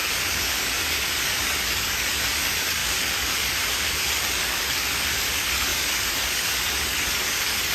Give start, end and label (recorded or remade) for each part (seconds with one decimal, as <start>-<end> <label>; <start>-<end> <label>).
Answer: 0.0-7.7 remade